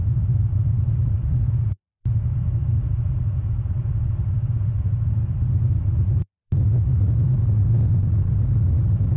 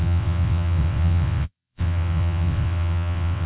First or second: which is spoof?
second